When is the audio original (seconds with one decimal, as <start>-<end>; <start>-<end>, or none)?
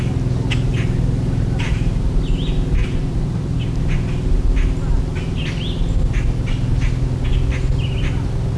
0.0-0.7; 2.0-2.8; 3.8-8.6